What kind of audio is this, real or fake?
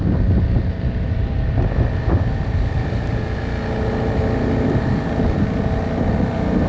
real